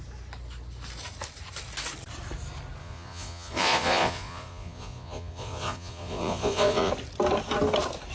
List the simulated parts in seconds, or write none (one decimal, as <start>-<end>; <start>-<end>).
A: 2.8-6.9